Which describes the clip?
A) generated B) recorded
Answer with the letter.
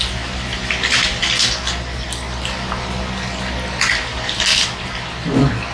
B